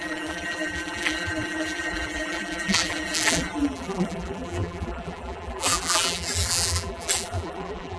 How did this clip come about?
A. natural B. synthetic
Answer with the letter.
B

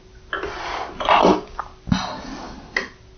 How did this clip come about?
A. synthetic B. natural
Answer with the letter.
B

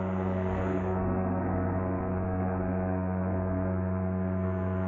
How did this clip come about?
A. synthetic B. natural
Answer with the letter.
A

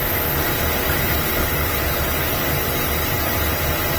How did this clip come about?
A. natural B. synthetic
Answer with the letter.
A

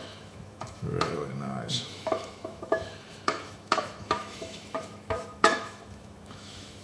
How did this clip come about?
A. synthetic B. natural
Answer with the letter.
A